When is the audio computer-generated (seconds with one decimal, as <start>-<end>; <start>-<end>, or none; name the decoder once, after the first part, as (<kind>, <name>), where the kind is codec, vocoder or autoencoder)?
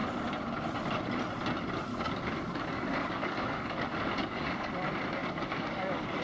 1.9-4.7 (codec, DAC); 5.2-6.2